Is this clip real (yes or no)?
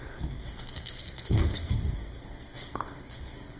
no